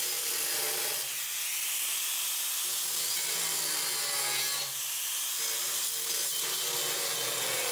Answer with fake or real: real